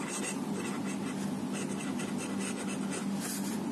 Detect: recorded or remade recorded